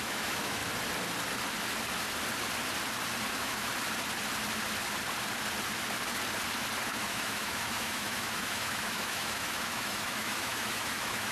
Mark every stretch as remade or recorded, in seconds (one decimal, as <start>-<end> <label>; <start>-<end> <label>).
0.0-0.6 remade; 0.6-3.3 recorded; 3.3-3.7 remade; 3.7-7.0 recorded; 7.0-11.3 remade